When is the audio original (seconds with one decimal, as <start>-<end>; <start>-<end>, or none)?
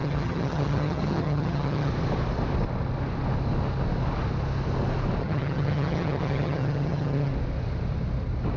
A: 1.9-5.2; 7.3-8.6